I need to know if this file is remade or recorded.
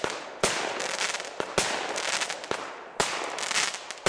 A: recorded